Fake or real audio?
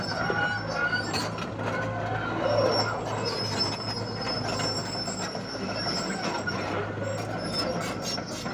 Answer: real